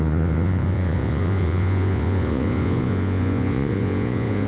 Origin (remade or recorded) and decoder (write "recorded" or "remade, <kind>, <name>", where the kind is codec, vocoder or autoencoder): remade, vocoder, Vocos